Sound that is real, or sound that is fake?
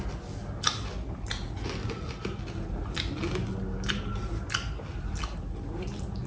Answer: real